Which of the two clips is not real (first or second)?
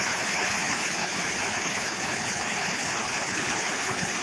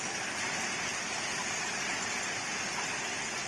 first